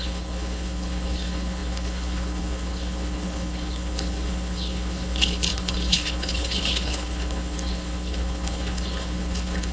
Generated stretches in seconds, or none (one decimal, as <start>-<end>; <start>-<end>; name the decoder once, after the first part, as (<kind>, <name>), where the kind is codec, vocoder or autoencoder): 0.0-9.7 (codec, HILCodec)